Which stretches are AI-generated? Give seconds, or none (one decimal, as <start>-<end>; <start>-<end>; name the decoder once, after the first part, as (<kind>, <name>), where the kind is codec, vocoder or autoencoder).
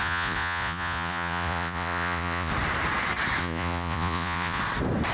0.0-2.5 (vocoder, Vocos); 3.4-4.6